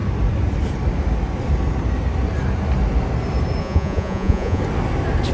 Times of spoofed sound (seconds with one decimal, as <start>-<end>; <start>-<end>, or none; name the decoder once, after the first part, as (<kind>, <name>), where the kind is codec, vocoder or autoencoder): 3.6-4.6 (vocoder, Vocos)